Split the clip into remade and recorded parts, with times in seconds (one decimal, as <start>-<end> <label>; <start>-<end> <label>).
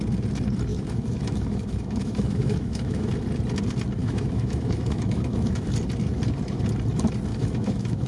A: 0.0-0.7 recorded; 0.7-3.1 remade; 3.1-4.0 recorded; 4.0-5.7 remade; 5.7-7.3 recorded; 7.3-8.1 remade